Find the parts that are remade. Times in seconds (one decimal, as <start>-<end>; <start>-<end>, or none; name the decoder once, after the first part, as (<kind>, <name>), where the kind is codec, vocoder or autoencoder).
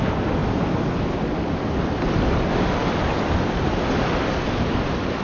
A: none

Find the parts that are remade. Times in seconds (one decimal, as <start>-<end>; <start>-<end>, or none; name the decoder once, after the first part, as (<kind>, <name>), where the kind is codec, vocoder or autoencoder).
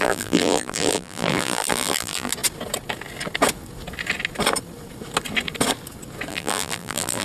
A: 0.0-2.3 (vocoder, BigVGAN v2); 6.3-7.2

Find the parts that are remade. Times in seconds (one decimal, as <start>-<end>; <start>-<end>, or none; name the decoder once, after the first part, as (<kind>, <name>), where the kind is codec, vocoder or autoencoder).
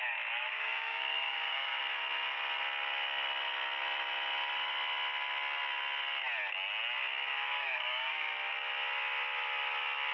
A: 0.4-1.8 (codec, DAC); 7.3-8.3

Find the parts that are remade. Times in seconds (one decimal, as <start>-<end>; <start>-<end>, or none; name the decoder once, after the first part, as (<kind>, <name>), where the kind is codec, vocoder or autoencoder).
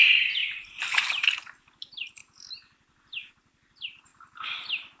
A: none